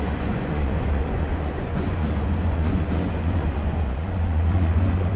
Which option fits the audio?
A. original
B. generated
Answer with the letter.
B